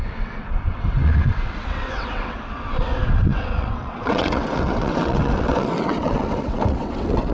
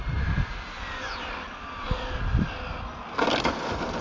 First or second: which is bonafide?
second